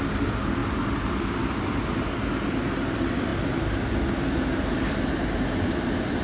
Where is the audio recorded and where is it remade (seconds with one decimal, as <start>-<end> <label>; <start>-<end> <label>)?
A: 0.0-6.2 recorded